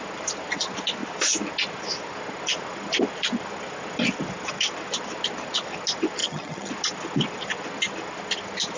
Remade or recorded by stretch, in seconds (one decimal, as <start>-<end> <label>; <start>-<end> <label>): 0.0-6.2 recorded; 6.2-6.7 remade; 6.7-8.8 recorded